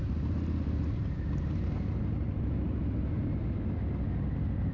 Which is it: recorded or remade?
recorded